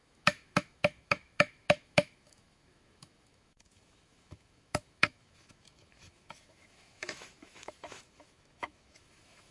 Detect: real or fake fake